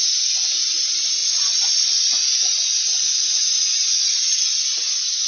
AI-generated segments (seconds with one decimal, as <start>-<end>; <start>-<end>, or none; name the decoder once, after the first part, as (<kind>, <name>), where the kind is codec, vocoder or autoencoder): none